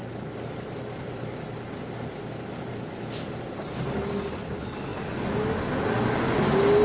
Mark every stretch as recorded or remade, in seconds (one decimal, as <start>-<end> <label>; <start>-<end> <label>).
0.0-6.8 recorded